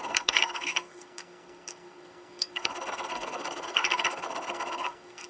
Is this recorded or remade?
remade